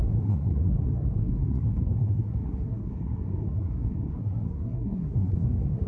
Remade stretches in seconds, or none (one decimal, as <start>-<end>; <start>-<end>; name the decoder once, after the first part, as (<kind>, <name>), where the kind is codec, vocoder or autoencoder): 0.0-5.9 (codec, SNAC)